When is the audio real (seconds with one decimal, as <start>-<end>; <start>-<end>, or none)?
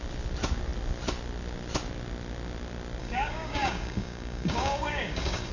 0.0-3.0